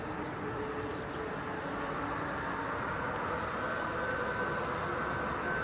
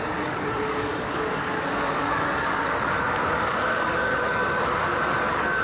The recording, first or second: first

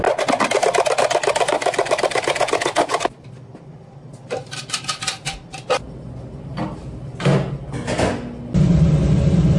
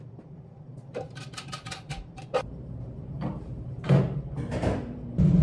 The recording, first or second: first